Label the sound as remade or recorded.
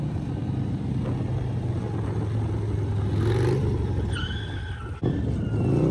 recorded